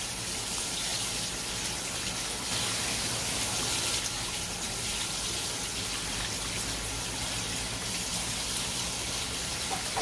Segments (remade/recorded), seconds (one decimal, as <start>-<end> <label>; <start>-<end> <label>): 0.0-10.0 recorded